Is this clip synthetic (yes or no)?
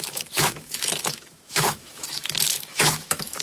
yes